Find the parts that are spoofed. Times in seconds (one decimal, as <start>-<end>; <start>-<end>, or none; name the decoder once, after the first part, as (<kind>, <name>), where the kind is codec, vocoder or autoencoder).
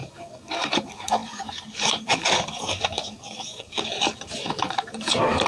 0.0-5.5 (codec, DAC)